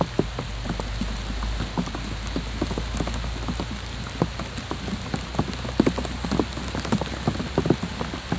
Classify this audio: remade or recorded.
recorded